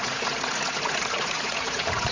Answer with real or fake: fake